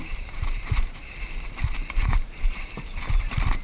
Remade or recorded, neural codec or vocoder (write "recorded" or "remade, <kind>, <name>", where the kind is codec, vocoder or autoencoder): remade, vocoder, BigVGAN v2